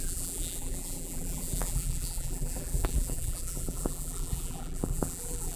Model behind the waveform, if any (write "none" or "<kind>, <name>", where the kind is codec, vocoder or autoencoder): vocoder, BigVGAN v2